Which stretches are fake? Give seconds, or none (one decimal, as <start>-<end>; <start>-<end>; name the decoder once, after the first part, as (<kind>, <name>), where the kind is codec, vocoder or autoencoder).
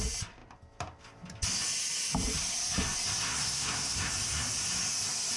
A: 3.3-4.1 (codec, SNAC)